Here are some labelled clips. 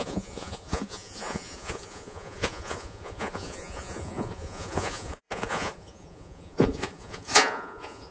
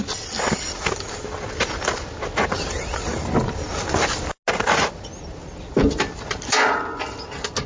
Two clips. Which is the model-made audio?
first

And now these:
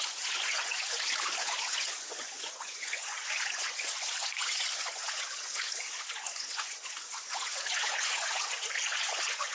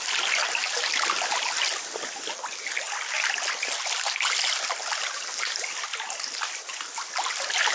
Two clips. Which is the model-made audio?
first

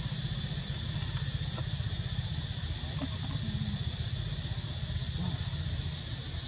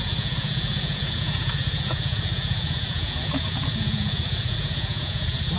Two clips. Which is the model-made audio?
second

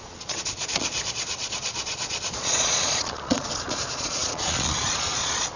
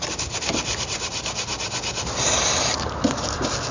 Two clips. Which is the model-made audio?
first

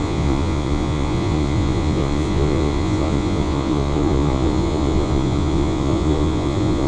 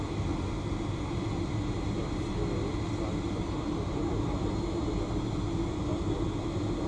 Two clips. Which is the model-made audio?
first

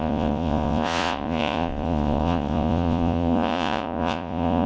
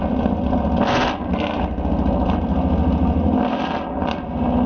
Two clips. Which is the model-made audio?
first